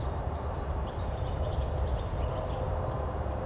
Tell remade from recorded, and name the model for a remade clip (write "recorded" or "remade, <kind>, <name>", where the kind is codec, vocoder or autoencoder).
recorded